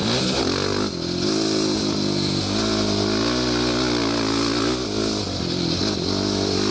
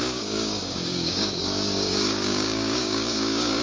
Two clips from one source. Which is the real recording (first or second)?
first